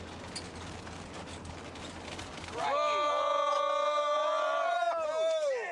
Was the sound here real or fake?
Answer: real